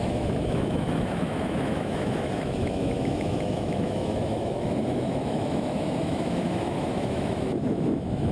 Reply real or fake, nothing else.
fake